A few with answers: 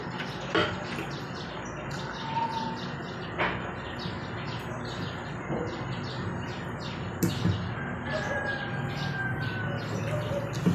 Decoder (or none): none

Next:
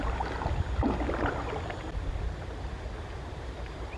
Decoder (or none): none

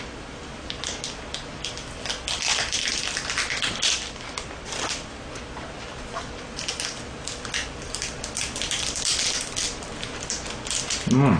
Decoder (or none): none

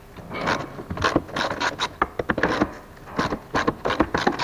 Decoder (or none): none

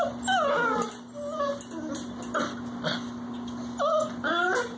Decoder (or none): none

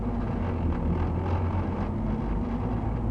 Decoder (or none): none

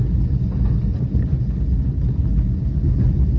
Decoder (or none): none